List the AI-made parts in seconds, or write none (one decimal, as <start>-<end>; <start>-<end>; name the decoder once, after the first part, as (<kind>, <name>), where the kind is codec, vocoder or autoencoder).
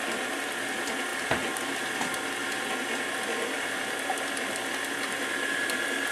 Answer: none